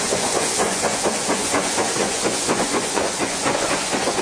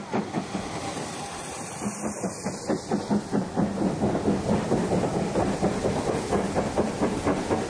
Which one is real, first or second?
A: second